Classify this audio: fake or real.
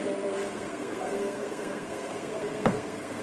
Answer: fake